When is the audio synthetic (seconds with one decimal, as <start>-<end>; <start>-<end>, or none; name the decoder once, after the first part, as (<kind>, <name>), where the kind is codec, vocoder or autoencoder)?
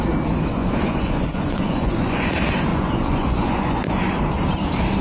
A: 0.6-2.3 (vocoder, Vocos); 2.7-4.2